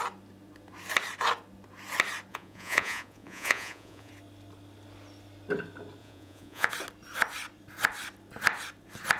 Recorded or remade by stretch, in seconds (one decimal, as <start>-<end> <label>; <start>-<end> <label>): 0.0-2.3 recorded; 2.3-4.1 remade; 4.1-6.0 recorded; 6.0-6.7 remade; 6.7-9.2 recorded